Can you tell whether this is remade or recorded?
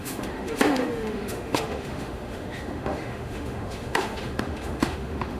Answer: remade